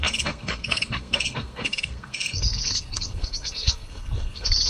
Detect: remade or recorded remade